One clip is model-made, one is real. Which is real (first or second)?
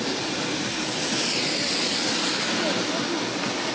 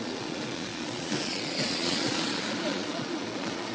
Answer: first